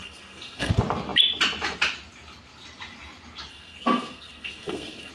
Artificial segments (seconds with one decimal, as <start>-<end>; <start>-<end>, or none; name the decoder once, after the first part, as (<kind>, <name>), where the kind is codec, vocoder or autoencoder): 0.0-0.7 (codec, SNAC); 3.5-5.1